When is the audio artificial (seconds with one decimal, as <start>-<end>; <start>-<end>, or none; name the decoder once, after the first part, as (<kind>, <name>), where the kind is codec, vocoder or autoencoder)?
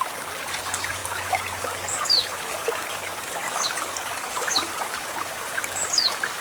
0.0-6.4 (codec, DAC)